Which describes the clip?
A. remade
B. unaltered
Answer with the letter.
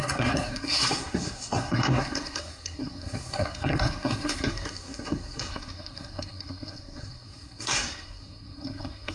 A